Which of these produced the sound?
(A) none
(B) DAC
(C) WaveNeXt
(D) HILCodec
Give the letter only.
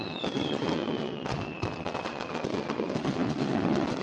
C